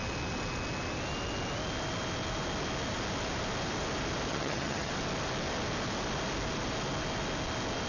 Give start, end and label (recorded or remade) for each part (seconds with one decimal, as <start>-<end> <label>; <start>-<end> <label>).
0.0-4.3 recorded; 4.3-4.9 remade; 4.9-7.9 recorded